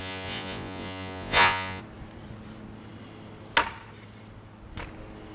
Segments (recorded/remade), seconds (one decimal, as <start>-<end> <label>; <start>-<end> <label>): 0.0-1.8 remade; 1.8-5.3 recorded